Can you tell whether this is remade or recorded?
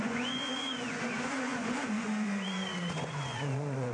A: remade